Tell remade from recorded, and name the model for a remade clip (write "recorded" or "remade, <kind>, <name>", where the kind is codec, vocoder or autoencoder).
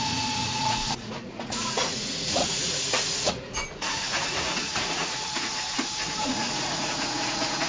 remade, vocoder, Vocos